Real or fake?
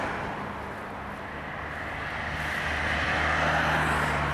real